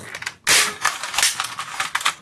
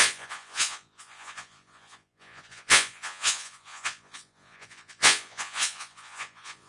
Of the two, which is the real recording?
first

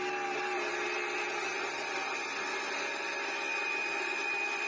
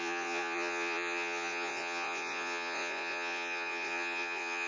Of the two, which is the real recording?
first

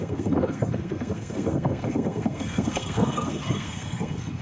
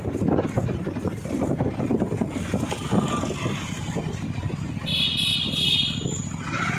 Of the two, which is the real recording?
second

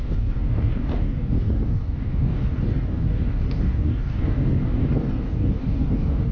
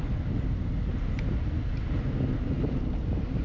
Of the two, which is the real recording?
second